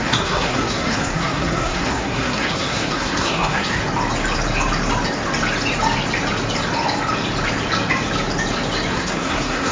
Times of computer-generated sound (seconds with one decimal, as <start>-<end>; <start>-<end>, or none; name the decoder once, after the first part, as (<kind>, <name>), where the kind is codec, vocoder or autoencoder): 0.0-3.8 (codec, SNAC); 8.9-9.7